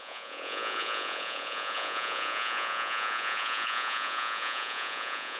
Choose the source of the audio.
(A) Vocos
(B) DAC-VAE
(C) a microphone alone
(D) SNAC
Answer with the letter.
A